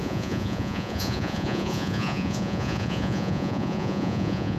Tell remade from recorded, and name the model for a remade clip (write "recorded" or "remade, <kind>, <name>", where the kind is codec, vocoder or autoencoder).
remade, vocoder, Vocos